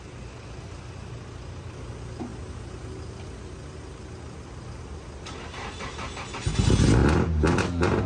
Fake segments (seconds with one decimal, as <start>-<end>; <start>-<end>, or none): none

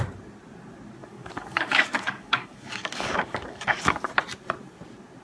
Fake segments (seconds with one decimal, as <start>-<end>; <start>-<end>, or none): 1.0-4.1